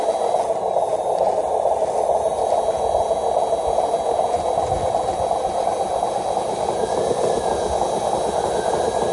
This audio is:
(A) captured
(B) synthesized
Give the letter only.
A